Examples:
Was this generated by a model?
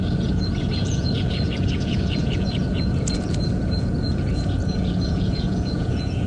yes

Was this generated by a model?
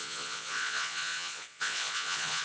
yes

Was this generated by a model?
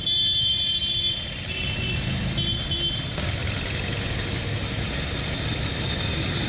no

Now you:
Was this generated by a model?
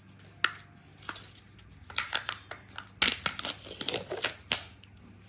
no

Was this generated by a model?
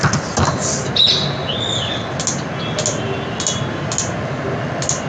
no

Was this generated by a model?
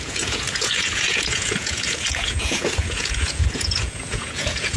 yes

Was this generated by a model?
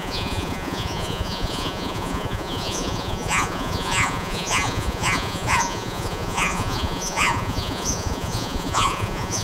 yes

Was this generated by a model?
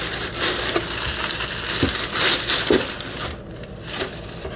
no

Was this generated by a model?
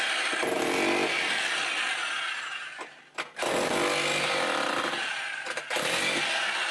no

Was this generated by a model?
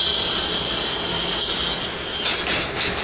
no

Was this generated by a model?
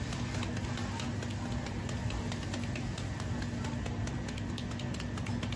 no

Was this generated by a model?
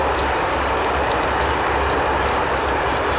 no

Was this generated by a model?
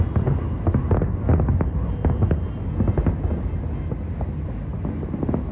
no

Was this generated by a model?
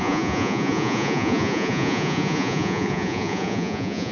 yes